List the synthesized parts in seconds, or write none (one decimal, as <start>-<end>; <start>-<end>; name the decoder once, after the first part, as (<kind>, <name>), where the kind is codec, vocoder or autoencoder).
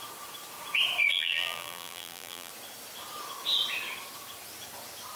1.1-2.5 (vocoder, BigVGAN v2)